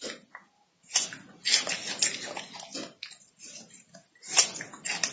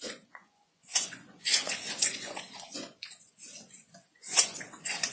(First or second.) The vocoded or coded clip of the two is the second